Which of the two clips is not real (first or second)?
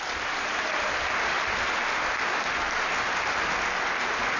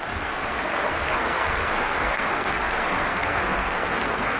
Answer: second